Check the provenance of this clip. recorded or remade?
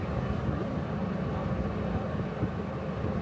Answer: recorded